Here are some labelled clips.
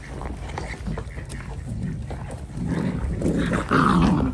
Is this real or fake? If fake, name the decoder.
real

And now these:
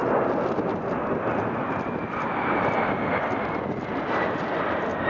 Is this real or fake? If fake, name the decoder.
real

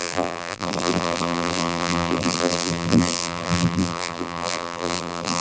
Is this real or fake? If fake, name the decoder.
fake, vocoder, BigVGAN v2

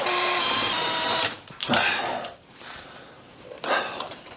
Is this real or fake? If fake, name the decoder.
fake, vocoder, BigVGAN v2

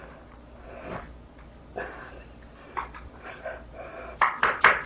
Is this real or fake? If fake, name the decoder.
real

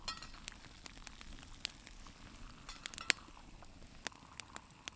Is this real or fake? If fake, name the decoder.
real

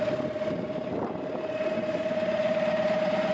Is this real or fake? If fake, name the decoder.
fake, vocoder, BigVGAN v2